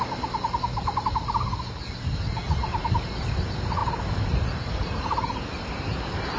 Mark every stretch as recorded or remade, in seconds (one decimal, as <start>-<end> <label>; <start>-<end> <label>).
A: 0.0-6.4 recorded